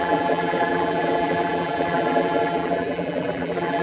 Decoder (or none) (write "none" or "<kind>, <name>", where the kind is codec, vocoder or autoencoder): vocoder, BigVGAN v2